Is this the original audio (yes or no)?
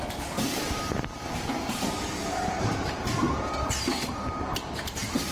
no